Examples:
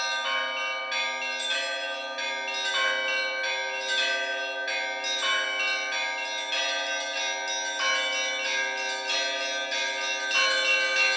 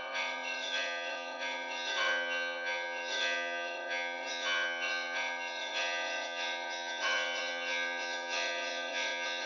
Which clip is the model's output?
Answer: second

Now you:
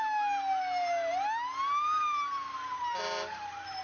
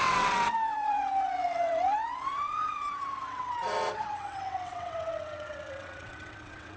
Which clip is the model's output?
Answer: second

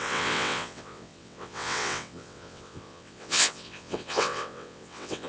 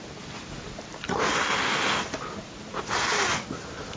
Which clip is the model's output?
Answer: first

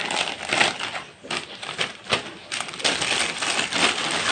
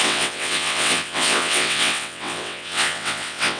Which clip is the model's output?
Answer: second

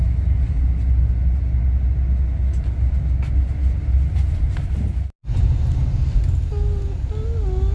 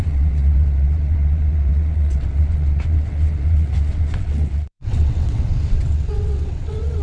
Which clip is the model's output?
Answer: second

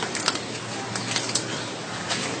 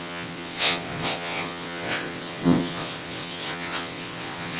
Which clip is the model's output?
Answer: second